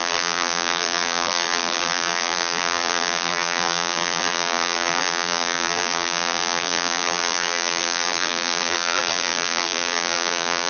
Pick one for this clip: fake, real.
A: fake